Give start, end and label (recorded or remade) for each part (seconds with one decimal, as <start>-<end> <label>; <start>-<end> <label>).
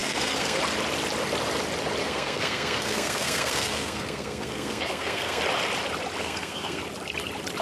0.0-0.6 remade; 0.6-2.0 recorded; 2.0-5.4 remade; 5.4-6.2 recorded; 6.2-6.8 remade; 6.8-7.6 recorded